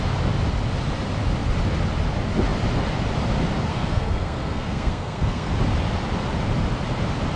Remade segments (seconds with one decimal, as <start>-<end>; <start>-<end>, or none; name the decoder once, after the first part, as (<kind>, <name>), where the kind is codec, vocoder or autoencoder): 3.7-5.5 (codec, SNAC)

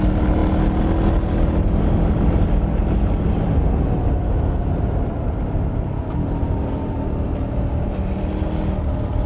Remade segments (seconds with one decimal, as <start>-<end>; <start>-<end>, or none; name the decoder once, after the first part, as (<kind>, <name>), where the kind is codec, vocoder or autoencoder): none

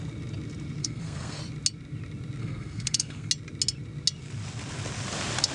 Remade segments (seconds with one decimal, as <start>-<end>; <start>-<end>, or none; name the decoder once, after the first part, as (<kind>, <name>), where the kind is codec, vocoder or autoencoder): 0.8-1.4 (codec, SNAC); 2.4-3.3

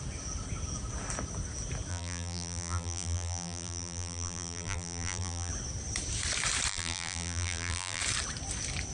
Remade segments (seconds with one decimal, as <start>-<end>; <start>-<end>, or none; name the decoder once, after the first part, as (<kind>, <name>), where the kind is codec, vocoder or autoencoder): 1.9-5.5 (vocoder, BigVGAN v2); 6.7-8.0

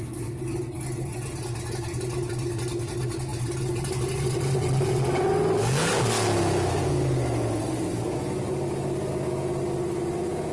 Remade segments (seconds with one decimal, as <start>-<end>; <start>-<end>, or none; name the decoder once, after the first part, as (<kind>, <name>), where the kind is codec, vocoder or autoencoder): none

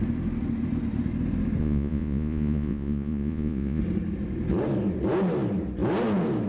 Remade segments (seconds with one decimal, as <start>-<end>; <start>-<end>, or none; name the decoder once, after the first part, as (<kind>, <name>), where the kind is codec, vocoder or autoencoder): 1.6-3.8 (vocoder, Vocos)

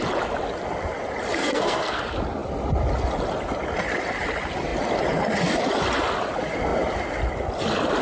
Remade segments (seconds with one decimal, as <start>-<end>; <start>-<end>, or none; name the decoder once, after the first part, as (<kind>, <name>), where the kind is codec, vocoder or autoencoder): 1.4-2.0 (codec, SNAC)

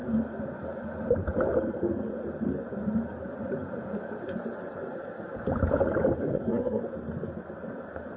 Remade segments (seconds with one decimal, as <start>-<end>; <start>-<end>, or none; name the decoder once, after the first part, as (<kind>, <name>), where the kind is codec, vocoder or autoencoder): 6.3-6.8 (codec, SNAC)